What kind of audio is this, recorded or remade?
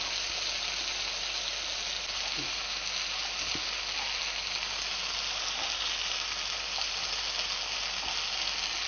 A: recorded